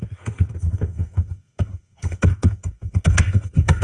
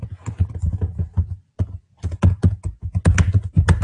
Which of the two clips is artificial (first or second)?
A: first